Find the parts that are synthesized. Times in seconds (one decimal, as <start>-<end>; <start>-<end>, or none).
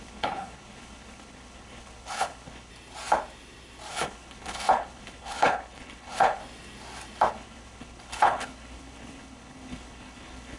0.0-2.7; 3.9-6.4; 7.3-10.6